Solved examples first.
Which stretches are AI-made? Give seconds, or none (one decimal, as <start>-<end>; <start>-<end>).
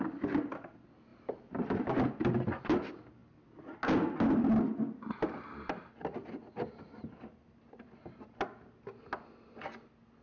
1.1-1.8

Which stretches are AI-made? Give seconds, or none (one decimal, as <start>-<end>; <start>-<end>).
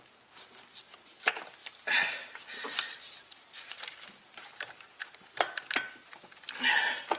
1.6-5.9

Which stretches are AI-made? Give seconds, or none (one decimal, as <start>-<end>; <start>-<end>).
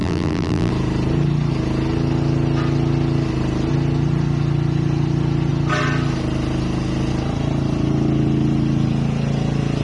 0.0-0.7